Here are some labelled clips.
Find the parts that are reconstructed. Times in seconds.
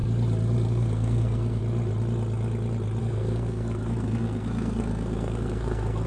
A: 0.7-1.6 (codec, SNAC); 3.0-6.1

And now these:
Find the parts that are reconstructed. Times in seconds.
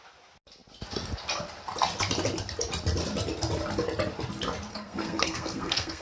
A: 4.7-6.0 (codec, SNAC)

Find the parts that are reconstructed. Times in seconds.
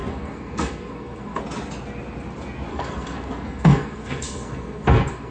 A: 0.0-1.4 (codec, SNAC); 2.7-5.3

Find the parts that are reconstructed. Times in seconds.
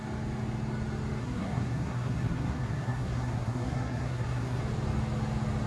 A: 1.2-4.6 (codec, SNAC)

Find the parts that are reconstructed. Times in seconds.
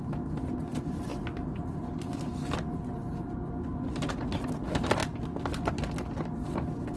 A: none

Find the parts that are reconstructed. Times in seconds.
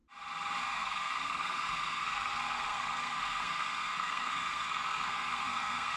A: 0.6-6.0 (codec, SNAC)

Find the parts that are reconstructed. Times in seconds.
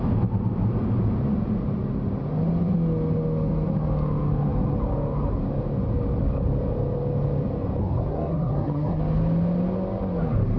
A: 7.8-9.0 (codec, SNAC)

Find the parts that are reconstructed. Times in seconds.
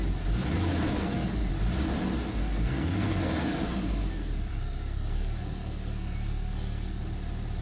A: 1.0-1.5 (codec, SNAC); 2.4-7.0